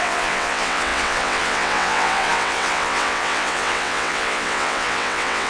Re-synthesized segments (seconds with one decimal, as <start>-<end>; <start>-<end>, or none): 0.0-5.5